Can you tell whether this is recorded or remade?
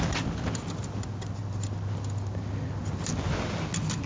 recorded